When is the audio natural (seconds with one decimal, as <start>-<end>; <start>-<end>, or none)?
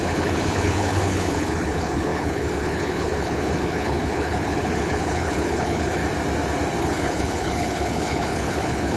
6.0-6.8